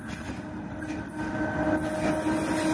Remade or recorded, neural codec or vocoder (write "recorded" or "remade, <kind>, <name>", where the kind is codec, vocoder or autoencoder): recorded